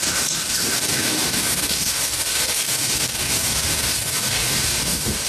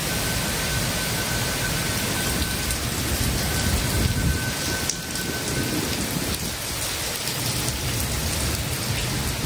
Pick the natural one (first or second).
second